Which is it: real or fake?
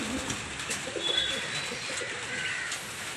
real